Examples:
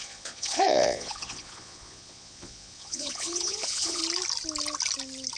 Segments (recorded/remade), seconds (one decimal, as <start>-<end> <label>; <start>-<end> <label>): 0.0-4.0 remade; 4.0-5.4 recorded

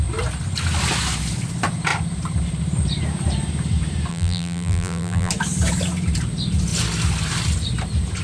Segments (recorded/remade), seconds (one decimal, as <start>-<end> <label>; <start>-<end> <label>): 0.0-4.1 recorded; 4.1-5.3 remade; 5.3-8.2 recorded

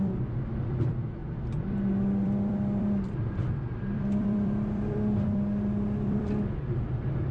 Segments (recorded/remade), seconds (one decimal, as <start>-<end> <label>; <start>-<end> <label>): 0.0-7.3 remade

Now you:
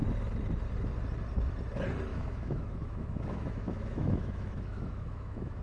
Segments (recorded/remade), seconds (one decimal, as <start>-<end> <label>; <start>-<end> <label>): 0.0-2.1 recorded; 2.1-5.6 remade